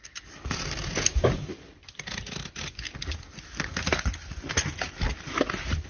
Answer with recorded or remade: recorded